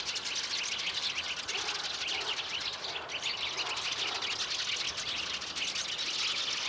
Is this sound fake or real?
real